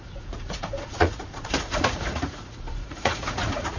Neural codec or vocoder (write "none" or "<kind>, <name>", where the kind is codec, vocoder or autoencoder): vocoder, Vocos